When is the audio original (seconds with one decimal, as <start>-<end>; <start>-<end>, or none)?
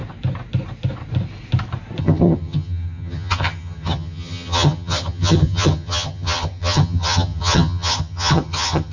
0.0-2.0